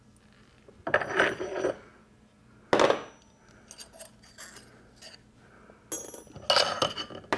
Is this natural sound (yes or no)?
yes